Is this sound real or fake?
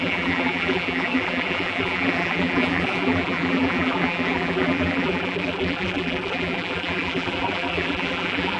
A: fake